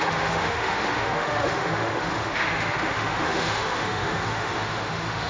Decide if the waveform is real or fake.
fake